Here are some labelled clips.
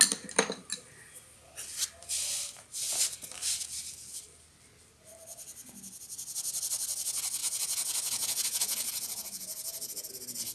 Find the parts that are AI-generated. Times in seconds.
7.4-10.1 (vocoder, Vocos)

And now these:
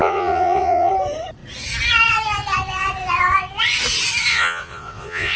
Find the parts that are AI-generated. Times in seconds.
0.0-0.9 (vocoder, Vocos); 4.3-5.4

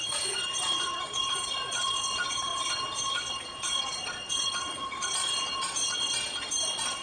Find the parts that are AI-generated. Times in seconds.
0.0-7.0 (vocoder, Vocos)

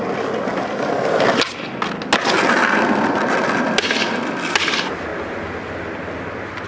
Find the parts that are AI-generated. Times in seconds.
none